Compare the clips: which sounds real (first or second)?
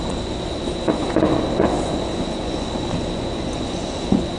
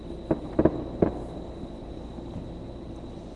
second